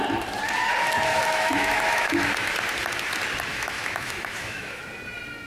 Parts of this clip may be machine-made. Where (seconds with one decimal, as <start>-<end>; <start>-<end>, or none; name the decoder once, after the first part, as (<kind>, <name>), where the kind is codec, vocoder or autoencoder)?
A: 1.1-2.5 (autoencoder, DAC-VAE); 3.5-4.8